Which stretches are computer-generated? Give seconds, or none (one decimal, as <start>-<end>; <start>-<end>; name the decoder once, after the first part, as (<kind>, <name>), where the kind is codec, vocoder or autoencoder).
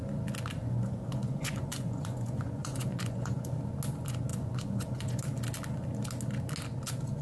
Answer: 0.6-3.5 (vocoder, Vocos); 4.3-5.2